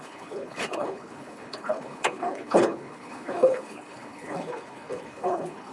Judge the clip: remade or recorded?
remade